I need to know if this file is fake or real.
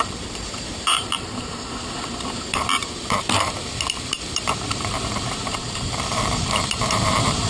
fake